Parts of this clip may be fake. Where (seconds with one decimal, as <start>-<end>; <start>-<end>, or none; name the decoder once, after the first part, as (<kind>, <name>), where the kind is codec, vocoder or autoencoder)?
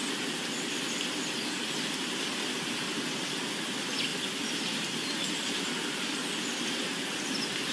0.0-0.8 (vocoder, BigVGAN v2); 4.1-6.6